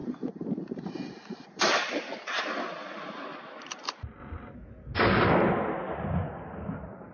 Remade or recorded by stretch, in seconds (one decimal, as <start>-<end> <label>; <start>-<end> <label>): 0.0-3.0 remade; 3.0-7.1 recorded

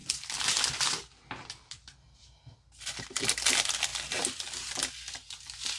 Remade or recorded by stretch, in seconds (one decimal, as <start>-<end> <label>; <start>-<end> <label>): 0.0-5.8 recorded

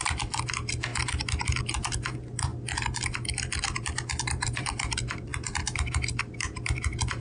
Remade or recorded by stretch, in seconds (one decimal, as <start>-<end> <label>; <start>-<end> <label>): 0.0-0.9 remade; 0.9-1.6 recorded; 1.6-2.5 remade; 2.5-4.2 recorded; 4.2-7.2 remade

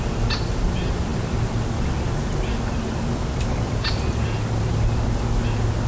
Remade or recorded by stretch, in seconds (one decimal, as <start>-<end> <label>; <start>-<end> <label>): 0.0-5.9 recorded

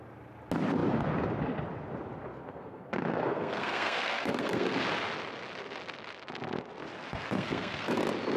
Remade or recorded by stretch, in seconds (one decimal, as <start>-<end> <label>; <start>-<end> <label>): 0.0-2.3 recorded; 2.3-4.8 remade; 4.8-7.1 recorded; 7.1-8.0 remade; 8.0-8.4 recorded

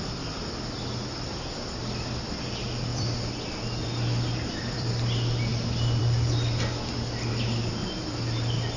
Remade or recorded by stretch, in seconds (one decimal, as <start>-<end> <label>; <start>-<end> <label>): 0.0-2.9 recorded; 2.9-4.9 remade; 4.9-5.5 recorded; 5.5-6.0 remade; 6.0-7.3 recorded; 7.3-8.8 remade

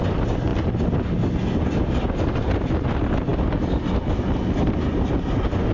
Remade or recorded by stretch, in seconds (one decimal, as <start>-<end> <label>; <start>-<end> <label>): 0.0-0.5 recorded; 0.5-1.2 remade; 1.2-5.7 recorded

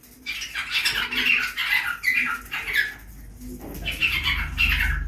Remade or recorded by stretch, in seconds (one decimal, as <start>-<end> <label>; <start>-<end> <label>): 0.0-5.1 recorded